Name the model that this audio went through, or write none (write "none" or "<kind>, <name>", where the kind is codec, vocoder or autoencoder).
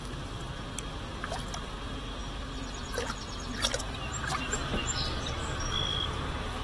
none